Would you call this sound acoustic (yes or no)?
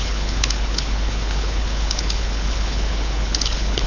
no